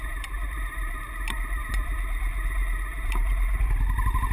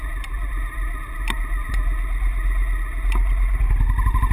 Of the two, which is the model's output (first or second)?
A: first